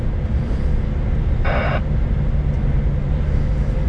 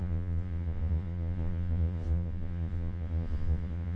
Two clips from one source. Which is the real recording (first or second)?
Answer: first